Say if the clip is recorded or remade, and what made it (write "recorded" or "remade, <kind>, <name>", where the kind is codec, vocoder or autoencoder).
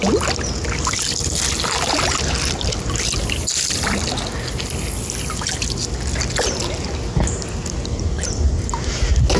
recorded